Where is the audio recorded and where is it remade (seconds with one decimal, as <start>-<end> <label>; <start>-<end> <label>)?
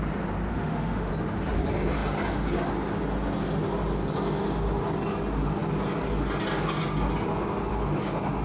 0.0-0.5 recorded; 0.5-1.1 remade; 1.1-8.4 recorded